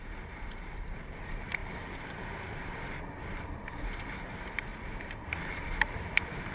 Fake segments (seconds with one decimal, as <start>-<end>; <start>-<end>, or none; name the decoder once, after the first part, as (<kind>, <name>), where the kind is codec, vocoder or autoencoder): 0.0-4.7 (vocoder, BigVGAN v2); 5.2-6.5